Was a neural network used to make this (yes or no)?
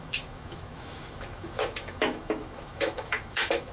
yes